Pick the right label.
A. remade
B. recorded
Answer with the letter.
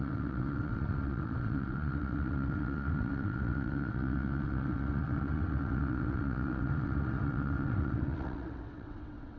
A